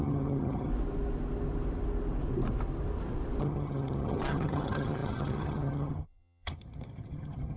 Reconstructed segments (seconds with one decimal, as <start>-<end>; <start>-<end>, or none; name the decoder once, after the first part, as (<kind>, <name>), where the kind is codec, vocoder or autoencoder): 0.0-0.7 (vocoder, HiFi-GAN); 3.4-7.6